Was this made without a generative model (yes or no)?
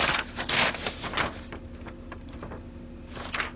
yes